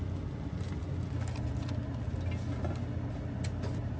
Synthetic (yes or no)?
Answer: no